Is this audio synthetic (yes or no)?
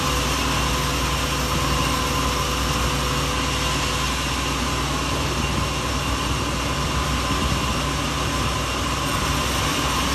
no